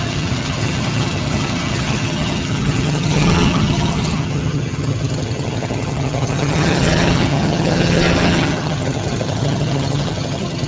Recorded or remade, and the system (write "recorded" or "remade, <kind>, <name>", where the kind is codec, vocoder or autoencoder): remade, vocoder, HiFi-GAN